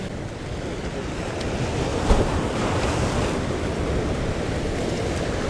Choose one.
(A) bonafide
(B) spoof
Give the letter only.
A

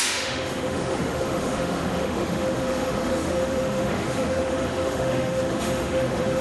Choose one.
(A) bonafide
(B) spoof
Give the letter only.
B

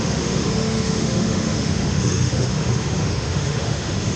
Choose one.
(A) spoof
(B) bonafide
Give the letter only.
A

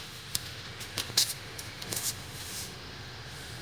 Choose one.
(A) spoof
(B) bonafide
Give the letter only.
A